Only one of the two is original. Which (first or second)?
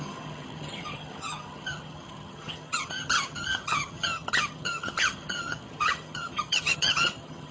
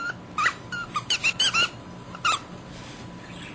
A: second